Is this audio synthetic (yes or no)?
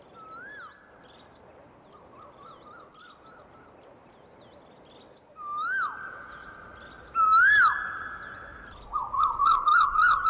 no